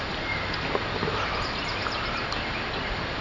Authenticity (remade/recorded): recorded